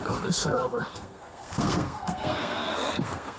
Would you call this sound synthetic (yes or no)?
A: yes